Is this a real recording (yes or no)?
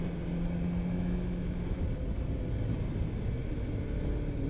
yes